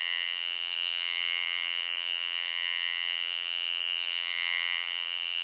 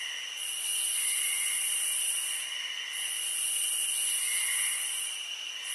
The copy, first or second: first